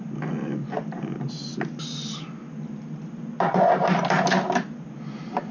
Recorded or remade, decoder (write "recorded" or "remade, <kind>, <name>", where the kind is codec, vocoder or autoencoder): recorded